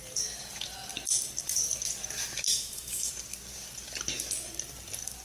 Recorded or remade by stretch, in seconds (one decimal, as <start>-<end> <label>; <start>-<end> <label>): 0.0-2.5 recorded; 2.5-3.1 remade; 3.1-5.2 recorded